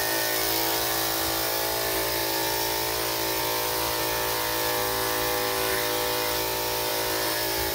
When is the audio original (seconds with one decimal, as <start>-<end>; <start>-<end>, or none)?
0.0-7.7